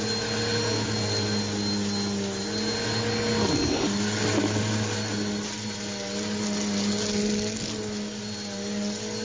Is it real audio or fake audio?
real